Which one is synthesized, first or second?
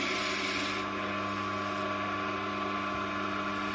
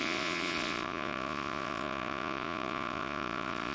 second